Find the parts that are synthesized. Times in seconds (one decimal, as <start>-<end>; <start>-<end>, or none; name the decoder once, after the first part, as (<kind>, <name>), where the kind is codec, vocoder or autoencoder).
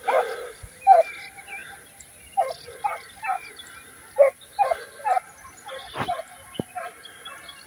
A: none